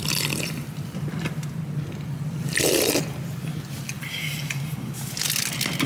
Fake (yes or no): no